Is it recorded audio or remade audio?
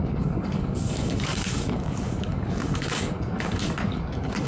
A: remade